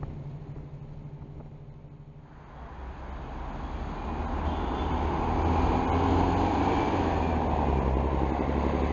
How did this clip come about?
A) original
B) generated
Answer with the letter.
A